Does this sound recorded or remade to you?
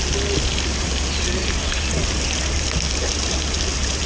recorded